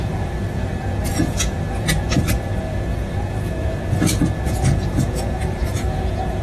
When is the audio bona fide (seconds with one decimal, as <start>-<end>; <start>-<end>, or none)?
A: none